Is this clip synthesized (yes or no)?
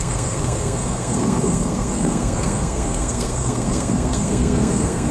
yes